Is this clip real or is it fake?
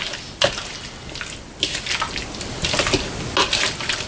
real